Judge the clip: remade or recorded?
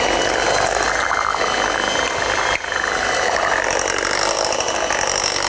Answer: recorded